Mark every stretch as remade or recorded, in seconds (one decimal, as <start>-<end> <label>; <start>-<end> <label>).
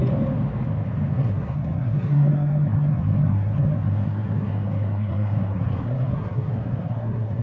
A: 0.0-1.1 recorded; 1.1-7.4 remade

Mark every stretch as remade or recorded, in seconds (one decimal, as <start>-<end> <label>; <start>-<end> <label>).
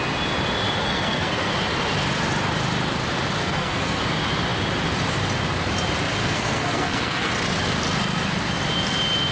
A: 0.0-0.8 recorded; 0.8-1.5 remade; 1.5-3.4 recorded; 3.4-4.0 remade; 4.0-6.2 recorded; 6.2-7.3 remade; 7.3-9.3 recorded